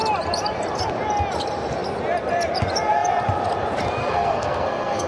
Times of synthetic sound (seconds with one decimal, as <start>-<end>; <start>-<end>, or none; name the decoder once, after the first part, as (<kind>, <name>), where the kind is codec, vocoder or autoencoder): 4.0-5.1 (codec, SNAC)